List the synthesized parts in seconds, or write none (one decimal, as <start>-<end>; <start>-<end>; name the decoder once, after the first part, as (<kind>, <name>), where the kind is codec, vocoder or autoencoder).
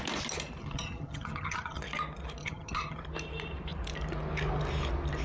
0.6-1.8 (vocoder, HiFi-GAN); 2.4-3.0